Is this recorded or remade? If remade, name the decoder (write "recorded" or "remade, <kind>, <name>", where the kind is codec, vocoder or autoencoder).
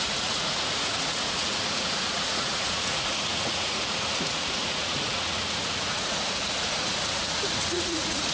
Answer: remade, vocoder, Vocos